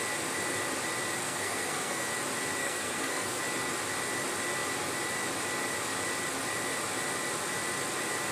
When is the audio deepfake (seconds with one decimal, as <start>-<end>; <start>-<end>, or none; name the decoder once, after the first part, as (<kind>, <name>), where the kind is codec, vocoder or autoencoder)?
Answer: 1.2-2.1 (codec, SNAC); 2.6-3.4